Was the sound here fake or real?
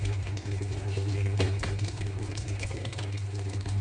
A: fake